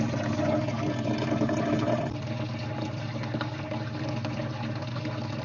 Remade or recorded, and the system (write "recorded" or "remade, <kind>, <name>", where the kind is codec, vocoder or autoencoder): recorded